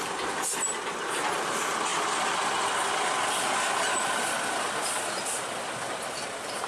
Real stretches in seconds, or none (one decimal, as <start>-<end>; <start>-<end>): 0.0-6.7

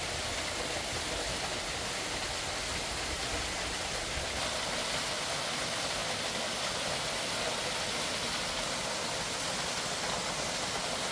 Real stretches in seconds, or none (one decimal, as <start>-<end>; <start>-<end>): 0.0-11.1

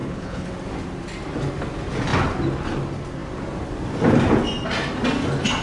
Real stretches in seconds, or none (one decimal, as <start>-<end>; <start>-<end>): 0.5-5.6

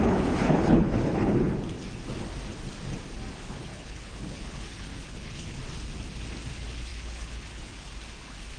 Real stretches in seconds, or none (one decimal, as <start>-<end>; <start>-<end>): 1.5-3.3; 5.6-6.5

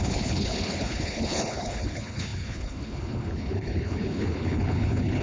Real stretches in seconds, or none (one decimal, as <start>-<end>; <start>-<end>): none

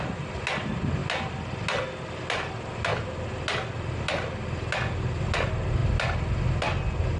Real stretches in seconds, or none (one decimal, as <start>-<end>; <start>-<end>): 0.0-7.2